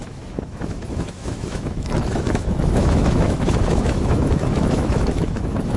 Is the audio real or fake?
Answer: fake